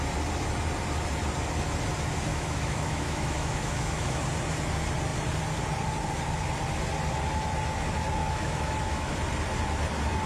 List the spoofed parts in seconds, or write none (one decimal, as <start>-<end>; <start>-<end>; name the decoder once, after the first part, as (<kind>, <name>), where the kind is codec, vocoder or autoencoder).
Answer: 2.3-4.2 (autoencoder, DAC-VAE); 8.2-9.1